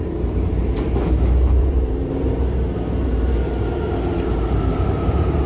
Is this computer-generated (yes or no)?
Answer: yes